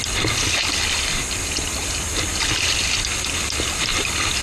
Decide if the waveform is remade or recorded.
recorded